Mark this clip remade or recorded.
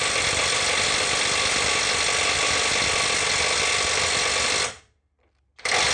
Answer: recorded